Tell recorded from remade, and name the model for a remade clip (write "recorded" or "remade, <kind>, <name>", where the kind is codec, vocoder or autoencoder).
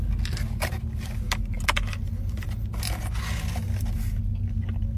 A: recorded